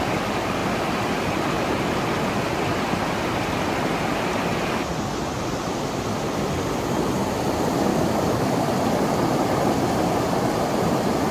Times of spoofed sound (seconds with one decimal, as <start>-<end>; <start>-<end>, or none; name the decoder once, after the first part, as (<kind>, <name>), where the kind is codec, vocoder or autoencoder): 7.9-8.7 (codec, DAC)